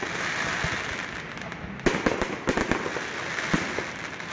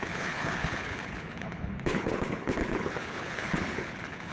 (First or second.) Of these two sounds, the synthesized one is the second